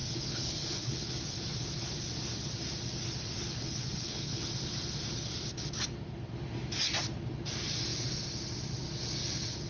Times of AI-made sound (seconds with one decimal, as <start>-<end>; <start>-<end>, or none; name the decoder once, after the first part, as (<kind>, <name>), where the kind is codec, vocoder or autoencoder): 0.0-1.1 (codec, HILCodec); 3.7-4.5

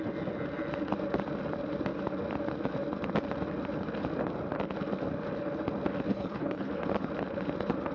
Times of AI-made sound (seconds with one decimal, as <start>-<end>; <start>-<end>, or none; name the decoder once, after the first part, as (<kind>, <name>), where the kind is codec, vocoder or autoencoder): 6.1-6.7 (codec, HILCodec)

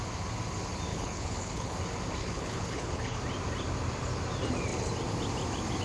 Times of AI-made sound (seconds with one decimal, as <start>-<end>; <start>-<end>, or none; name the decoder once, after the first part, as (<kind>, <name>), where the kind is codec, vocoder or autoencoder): 0.9-1.8 (codec, HILCodec); 2.2-3.2

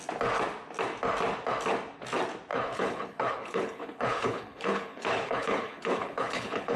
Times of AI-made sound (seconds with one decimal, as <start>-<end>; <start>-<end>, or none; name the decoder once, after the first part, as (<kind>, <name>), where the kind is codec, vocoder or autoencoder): 2.5-6.8 (codec, HILCodec)

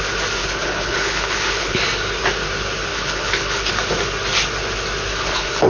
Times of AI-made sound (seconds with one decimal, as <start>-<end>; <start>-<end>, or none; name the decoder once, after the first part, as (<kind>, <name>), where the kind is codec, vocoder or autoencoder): 0.4-1.8 (codec, HILCodec); 2.9-3.7; 5.1-5.7

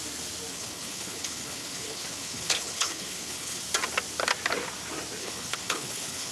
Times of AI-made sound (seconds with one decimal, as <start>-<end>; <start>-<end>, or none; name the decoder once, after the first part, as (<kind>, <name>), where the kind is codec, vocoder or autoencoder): 0.5-3.6 (codec, HILCodec); 5.2-6.3

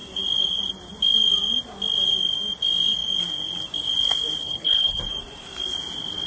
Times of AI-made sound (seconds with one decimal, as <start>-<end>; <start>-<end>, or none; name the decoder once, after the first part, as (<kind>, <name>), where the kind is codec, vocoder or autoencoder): 4.4-5.0 (codec, HILCodec)

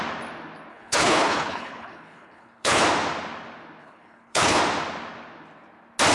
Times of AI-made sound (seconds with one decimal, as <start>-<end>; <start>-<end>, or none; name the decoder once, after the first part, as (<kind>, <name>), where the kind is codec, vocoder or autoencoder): 0.7-2.8 (codec, HILCodec); 3.8-4.6